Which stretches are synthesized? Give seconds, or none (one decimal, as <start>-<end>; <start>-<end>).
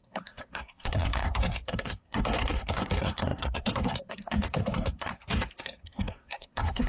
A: 0.0-6.9